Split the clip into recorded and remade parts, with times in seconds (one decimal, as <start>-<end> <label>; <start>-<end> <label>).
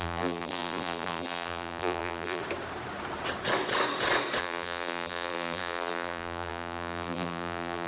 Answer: 0.0-2.4 remade; 2.4-4.4 recorded; 4.4-7.9 remade